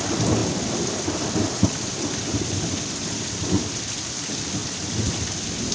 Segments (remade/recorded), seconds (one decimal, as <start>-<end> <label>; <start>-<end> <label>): 0.0-0.4 recorded; 0.4-3.8 remade; 3.8-4.6 recorded; 4.6-5.3 remade; 5.3-5.7 recorded